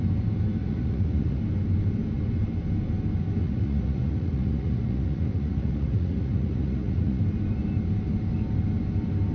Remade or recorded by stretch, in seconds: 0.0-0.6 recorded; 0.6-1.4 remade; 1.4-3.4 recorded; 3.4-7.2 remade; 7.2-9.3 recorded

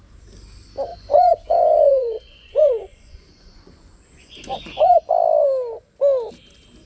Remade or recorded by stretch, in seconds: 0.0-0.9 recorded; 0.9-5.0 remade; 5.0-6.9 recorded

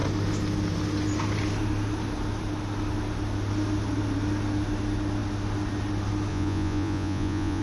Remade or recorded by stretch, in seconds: 0.0-6.3 recorded; 6.3-7.6 remade